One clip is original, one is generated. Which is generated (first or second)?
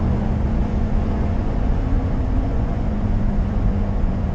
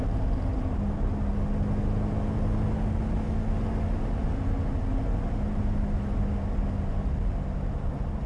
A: first